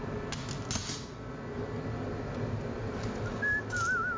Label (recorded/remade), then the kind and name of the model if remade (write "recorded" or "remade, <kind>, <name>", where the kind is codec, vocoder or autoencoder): recorded